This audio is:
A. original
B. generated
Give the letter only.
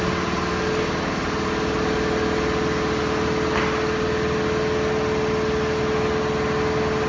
A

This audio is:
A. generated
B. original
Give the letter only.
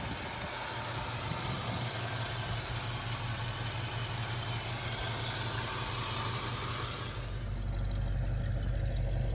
B